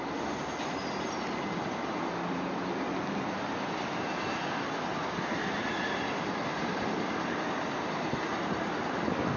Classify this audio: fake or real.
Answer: real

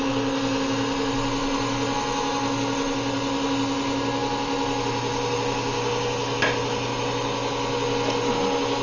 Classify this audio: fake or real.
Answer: real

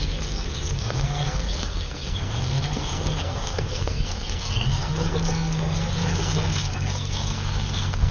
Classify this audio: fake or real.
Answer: fake